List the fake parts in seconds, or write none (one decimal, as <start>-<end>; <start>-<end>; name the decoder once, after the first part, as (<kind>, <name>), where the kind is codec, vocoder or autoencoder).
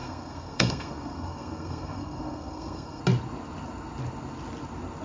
0.0-3.0 (codec, SNAC)